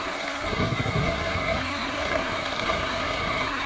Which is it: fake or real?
fake